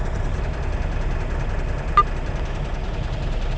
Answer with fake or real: real